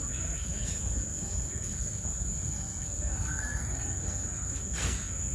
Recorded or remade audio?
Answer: remade